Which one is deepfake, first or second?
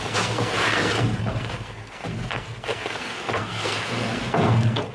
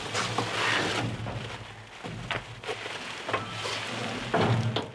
first